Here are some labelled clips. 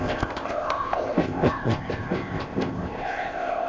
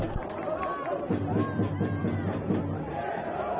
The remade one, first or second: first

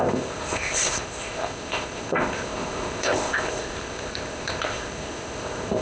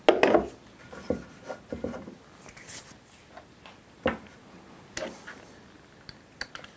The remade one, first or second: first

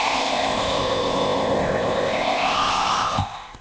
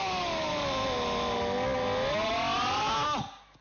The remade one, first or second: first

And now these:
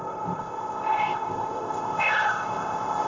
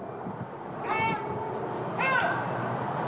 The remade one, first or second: first